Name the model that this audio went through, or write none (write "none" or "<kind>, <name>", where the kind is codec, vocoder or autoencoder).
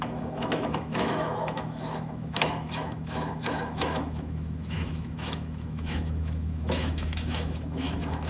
autoencoder, DAC-VAE